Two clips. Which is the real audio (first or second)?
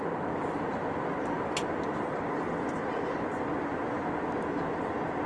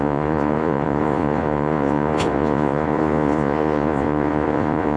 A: first